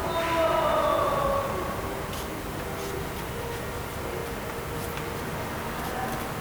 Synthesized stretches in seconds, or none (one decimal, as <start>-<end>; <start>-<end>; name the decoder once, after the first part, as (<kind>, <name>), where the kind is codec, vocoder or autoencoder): none